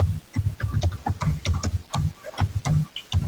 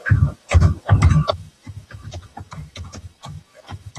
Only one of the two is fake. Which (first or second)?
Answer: second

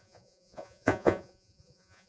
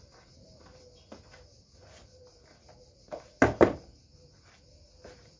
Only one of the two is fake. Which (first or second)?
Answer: first